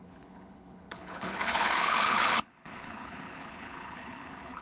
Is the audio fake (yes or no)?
yes